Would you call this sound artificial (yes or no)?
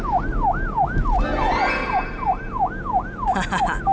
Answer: no